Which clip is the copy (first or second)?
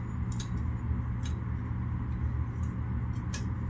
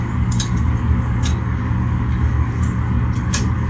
second